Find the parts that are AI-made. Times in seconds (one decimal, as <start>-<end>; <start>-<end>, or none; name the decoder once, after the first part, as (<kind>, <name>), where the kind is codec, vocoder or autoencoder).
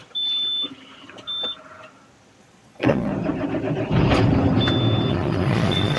2.4-3.1 (vocoder, Vocos); 5.1-6.0